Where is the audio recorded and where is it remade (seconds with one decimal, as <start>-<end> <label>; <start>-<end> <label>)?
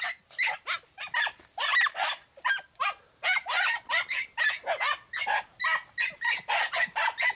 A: 0.0-1.7 recorded; 1.7-4.5 remade; 4.5-7.3 recorded